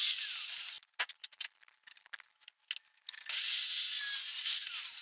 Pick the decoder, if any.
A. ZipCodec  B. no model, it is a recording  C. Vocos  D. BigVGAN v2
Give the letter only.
B